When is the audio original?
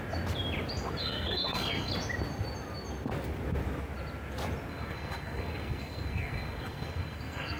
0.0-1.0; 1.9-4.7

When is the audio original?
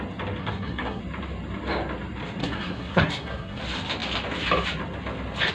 0.0-0.4; 1.0-2.4; 3.6-5.5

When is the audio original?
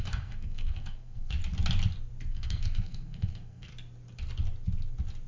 1.4-2.3; 3.7-5.3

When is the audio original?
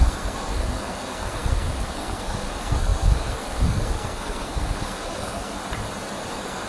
5.6-6.3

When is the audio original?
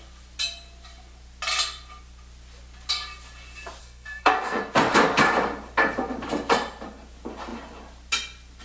0.0-3.8; 4.6-8.6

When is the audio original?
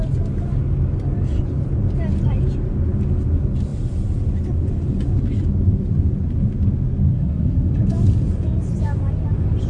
0.0-7.1; 7.7-9.7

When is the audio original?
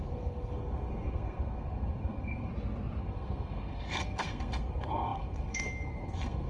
2.5-3.0